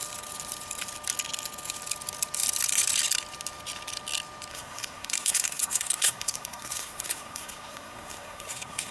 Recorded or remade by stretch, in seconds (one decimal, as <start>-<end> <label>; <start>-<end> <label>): 0.0-4.5 recorded; 4.5-8.9 remade